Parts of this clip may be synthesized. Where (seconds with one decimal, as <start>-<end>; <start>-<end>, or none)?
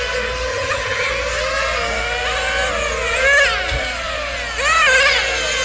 0.5-1.1